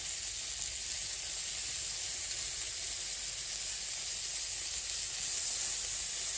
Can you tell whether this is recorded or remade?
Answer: recorded